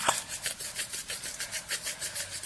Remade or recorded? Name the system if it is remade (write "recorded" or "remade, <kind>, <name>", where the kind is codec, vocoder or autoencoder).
remade, vocoder, BigVGAN v2